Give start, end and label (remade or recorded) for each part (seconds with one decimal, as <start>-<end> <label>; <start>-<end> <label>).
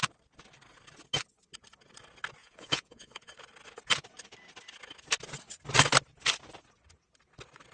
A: 0.0-2.4 recorded; 2.4-3.3 remade; 3.3-7.7 recorded